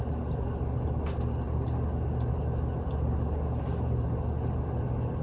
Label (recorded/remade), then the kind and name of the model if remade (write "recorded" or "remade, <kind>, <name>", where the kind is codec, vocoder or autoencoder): recorded